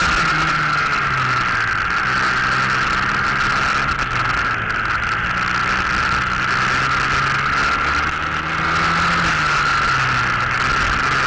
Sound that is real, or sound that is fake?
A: real